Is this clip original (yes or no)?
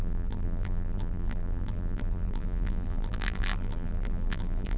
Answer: no